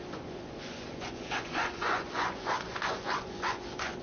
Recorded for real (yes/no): no